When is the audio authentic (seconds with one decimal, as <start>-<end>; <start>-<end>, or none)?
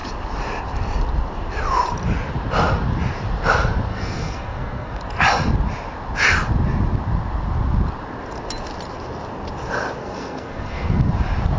0.0-3.9; 5.0-10.0; 11.1-11.6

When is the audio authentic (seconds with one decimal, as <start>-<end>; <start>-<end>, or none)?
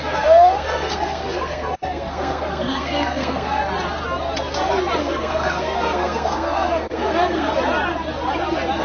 3.6-5.0; 7.5-8.8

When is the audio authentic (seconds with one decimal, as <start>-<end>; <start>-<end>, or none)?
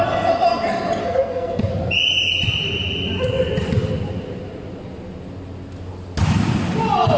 0.0-1.0; 1.7-7.2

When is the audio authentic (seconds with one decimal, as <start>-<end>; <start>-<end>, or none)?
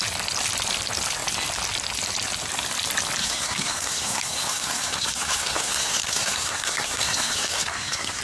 0.0-3.2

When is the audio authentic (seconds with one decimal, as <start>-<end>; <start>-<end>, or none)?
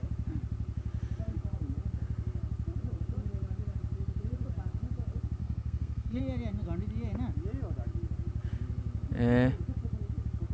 0.0-5.4; 6.2-10.5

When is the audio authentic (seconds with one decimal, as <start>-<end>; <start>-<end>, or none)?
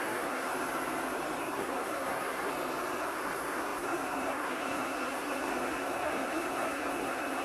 0.5-1.4; 2.5-3.0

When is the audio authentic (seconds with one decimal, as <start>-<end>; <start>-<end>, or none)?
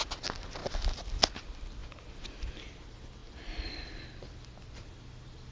0.0-5.5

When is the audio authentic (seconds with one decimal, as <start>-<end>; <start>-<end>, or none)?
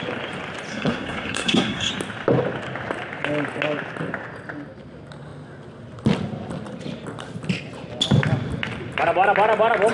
0.0-0.7; 1.9-9.9